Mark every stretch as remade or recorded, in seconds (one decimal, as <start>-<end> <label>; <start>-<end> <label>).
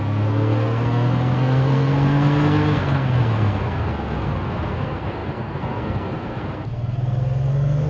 0.0-7.9 remade